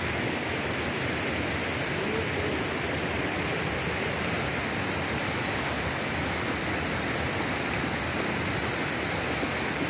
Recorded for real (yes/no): yes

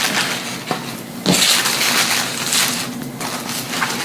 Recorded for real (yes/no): yes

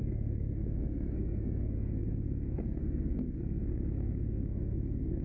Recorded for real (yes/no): no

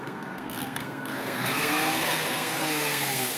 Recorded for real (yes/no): no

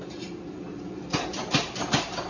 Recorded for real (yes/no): yes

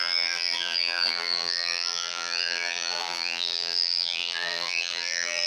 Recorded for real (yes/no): no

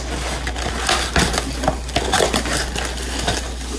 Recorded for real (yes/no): yes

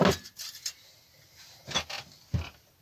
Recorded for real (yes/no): yes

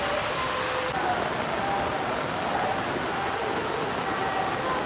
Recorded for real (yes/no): yes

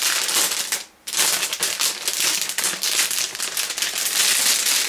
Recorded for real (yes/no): yes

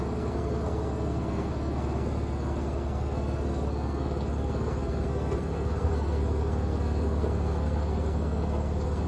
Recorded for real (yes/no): no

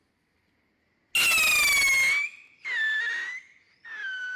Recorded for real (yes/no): yes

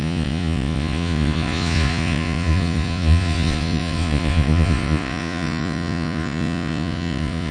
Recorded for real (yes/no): no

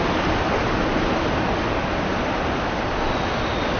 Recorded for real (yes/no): yes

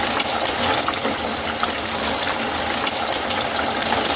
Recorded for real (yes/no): yes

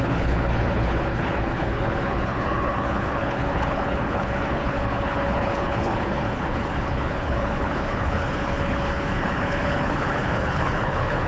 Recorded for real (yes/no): no